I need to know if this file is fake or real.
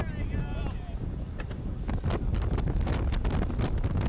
real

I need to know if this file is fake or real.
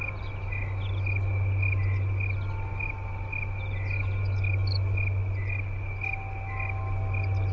real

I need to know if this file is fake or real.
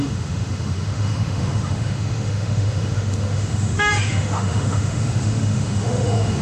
fake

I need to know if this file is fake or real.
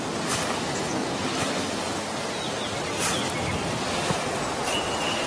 real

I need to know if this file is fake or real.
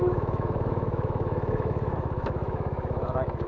fake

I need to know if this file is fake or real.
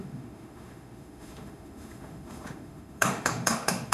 fake